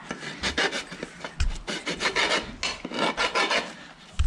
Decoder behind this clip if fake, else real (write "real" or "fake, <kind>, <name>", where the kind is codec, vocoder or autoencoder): real